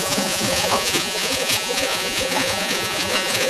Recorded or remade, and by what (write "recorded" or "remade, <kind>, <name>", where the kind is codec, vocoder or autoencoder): remade, vocoder, Vocos